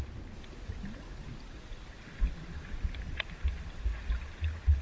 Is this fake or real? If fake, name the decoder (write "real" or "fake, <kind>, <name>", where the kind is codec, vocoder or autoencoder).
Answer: real